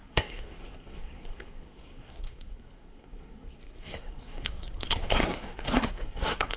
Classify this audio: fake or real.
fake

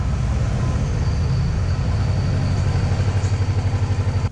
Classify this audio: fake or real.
real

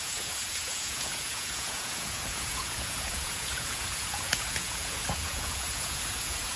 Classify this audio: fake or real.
fake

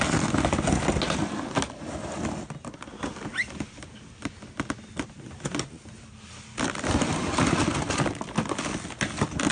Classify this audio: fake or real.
real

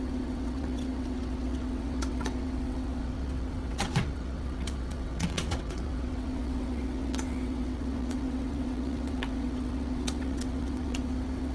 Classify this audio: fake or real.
fake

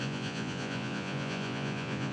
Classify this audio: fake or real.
fake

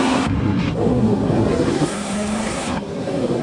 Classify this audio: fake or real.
fake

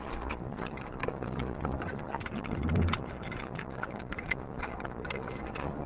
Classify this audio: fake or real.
fake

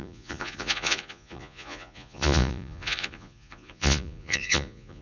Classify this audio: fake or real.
fake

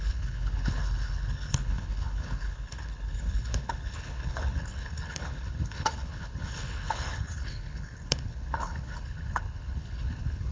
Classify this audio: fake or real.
fake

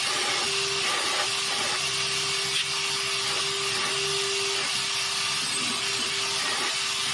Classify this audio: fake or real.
real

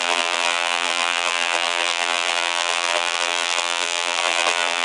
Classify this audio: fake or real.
fake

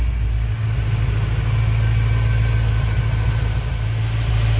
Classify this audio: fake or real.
real